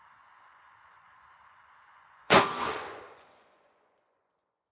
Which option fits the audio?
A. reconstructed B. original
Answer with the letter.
A